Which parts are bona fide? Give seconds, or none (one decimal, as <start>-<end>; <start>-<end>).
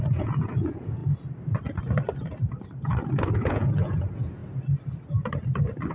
1.0-3.3; 4.4-5.9